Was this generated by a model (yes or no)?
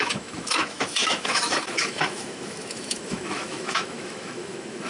yes